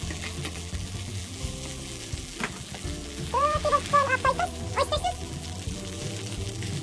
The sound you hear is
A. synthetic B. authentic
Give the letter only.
A